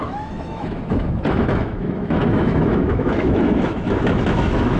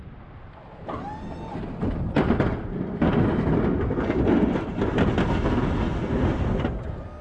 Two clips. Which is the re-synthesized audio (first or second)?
first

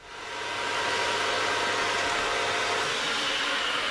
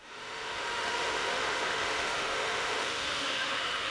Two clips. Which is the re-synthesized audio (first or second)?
second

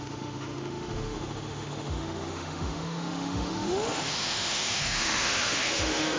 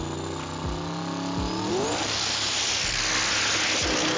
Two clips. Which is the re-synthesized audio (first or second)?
first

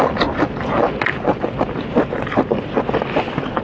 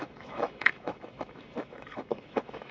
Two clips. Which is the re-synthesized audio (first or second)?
second